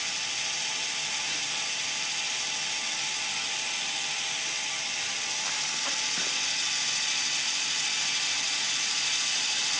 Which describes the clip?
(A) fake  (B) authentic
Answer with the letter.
B